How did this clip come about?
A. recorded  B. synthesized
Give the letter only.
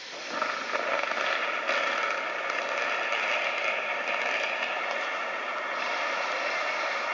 A